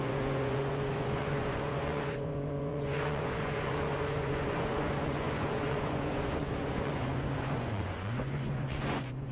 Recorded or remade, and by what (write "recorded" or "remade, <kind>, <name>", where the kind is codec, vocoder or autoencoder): remade, vocoder, Vocos